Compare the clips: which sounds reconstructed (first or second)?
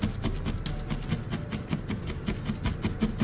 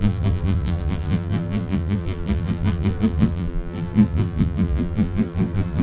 second